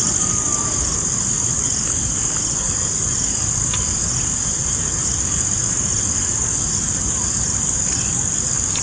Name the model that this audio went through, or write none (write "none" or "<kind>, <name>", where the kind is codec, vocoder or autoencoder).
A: none